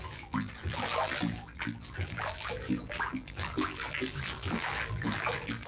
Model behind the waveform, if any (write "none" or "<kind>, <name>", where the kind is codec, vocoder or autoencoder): vocoder, BigVGAN v2